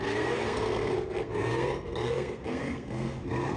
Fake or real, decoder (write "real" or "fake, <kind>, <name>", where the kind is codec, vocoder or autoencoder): fake, codec, SNAC